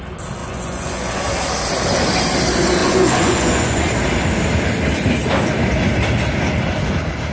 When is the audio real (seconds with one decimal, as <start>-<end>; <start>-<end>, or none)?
0.0-0.4; 1.2-2.8; 3.8-7.3